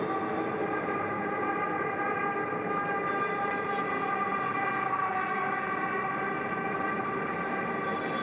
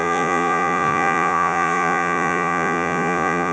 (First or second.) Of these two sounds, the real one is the first